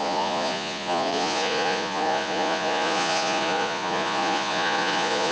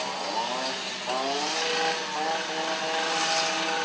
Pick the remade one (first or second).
first